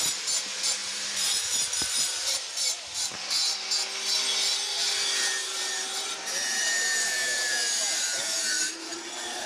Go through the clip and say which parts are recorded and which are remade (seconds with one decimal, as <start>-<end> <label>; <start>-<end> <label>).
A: 0.0-0.8 recorded; 0.8-2.5 remade; 2.5-5.4 recorded; 5.4-9.1 remade; 9.1-9.5 recorded